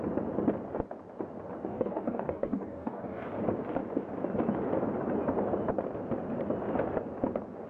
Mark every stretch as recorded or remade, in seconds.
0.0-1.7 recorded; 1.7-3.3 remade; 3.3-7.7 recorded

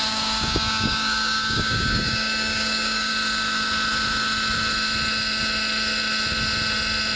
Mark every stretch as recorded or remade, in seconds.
0.0-3.1 remade; 3.1-7.2 recorded

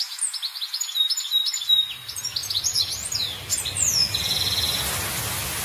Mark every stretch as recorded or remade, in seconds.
0.0-5.6 recorded

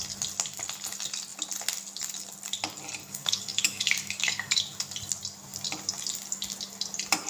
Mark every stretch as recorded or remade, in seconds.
0.0-3.0 recorded; 3.0-4.6 remade; 4.6-7.3 recorded